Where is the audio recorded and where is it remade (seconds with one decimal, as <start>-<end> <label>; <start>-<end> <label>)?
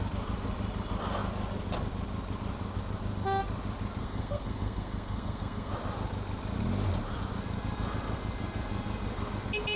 0.0-4.0 recorded; 4.0-5.7 remade; 5.7-9.8 recorded